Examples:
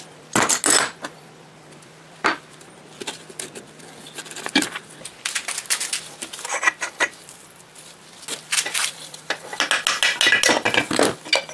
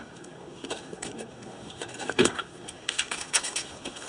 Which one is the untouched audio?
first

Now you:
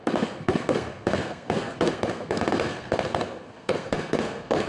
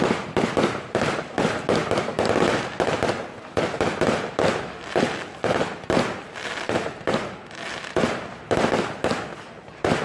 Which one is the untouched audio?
second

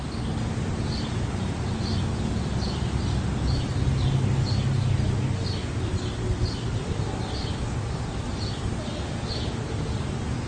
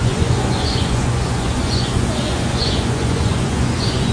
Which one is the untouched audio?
first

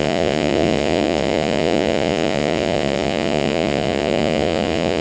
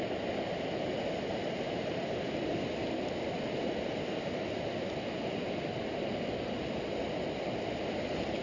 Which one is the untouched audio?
second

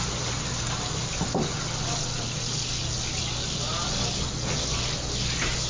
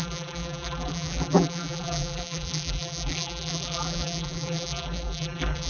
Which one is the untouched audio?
first